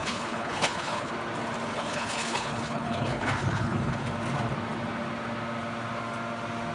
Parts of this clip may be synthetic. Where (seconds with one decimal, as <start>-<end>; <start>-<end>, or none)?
0.0-1.1; 1.7-4.1